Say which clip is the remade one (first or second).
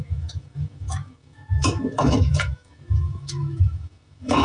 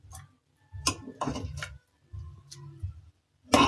first